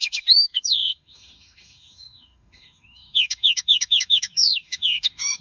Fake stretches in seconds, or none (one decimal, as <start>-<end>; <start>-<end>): 0.0-5.4